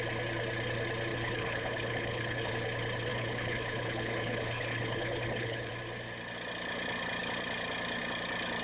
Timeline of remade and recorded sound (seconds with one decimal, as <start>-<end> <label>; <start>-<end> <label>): 0.0-1.1 recorded; 1.1-2.5 remade; 2.5-3.1 recorded; 3.1-5.7 remade; 5.7-8.6 recorded